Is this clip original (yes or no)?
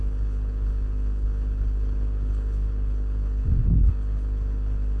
no